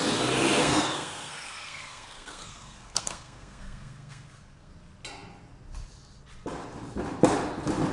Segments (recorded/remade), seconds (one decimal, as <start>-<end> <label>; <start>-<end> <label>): 0.0-0.6 recorded; 0.6-4.7 remade; 4.7-7.9 recorded